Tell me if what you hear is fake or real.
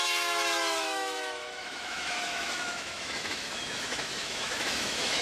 fake